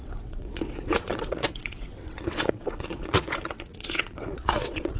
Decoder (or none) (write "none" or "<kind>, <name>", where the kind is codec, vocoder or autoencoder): vocoder, WaveNeXt